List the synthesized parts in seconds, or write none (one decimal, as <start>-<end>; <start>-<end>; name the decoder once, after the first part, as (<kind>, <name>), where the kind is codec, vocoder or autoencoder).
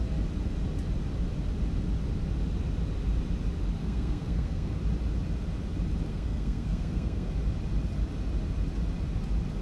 3.8-4.8 (codec, SNAC); 6.1-7.3